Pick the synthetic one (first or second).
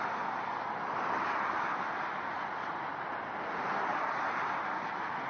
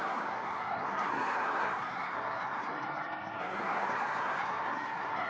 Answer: second